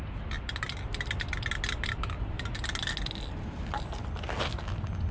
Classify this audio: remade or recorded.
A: recorded